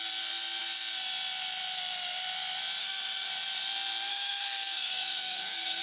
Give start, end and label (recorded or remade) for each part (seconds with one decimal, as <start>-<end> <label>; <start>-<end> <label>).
0.0-2.8 recorded; 2.8-3.3 remade; 3.3-4.1 recorded; 4.1-5.8 remade